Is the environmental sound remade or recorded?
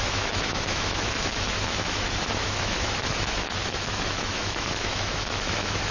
remade